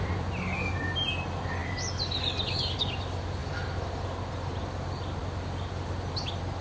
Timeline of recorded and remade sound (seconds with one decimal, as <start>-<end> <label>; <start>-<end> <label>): 0.0-6.6 recorded